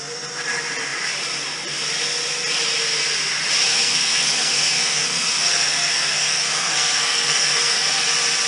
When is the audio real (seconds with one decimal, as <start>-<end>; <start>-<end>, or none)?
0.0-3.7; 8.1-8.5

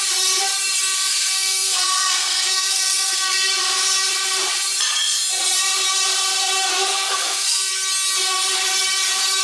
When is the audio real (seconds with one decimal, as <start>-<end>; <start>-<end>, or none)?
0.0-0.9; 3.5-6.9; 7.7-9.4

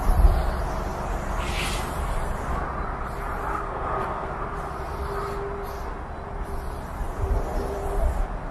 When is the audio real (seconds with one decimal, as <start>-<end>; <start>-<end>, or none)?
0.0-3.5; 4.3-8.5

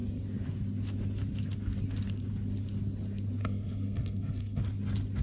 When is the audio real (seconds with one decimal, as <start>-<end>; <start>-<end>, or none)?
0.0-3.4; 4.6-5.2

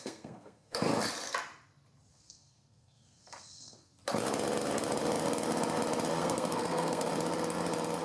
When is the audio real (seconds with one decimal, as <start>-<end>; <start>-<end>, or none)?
0.9-2.1; 3.9-6.2; 7.1-8.0

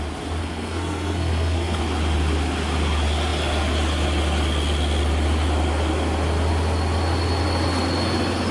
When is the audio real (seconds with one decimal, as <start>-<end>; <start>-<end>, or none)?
0.0-0.4; 1.8-8.5

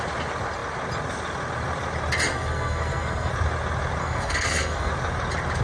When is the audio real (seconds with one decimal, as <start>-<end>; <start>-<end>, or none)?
0.0-2.3; 3.3-4.0; 4.9-5.6

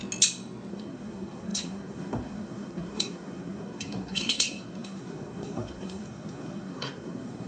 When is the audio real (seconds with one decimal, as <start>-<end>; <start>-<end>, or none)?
0.0-0.7